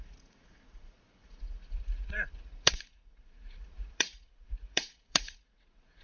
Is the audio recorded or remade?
remade